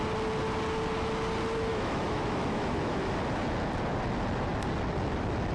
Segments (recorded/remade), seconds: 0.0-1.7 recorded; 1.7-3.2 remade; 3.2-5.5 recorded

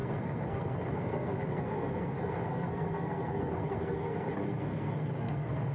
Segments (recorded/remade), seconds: 0.0-5.7 remade

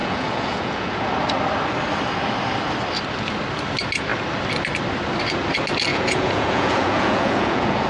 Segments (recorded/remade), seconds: 0.0-1.1 remade; 1.1-5.9 recorded; 5.9-7.9 remade

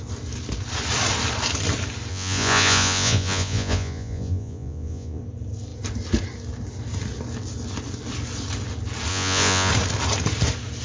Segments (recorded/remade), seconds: 0.0-2.1 recorded; 2.1-5.2 remade; 5.2-9.1 recorded; 9.1-9.7 remade; 9.7-10.8 recorded

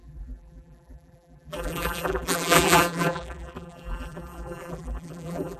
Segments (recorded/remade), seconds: 0.0-5.6 remade

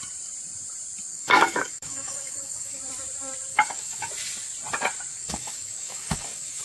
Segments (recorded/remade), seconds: 0.0-1.1 recorded; 1.1-2.8 remade; 2.8-3.5 recorded; 3.5-4.1 remade; 4.1-5.1 recorded; 5.1-6.6 remade

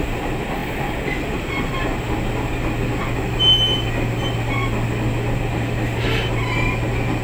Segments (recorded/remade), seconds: 0.0-7.2 recorded

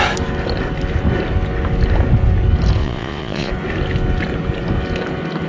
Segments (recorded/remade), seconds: 0.0-2.8 recorded; 2.8-3.5 remade; 3.5-5.5 recorded